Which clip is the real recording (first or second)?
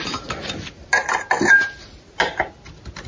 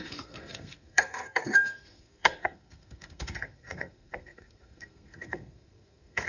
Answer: first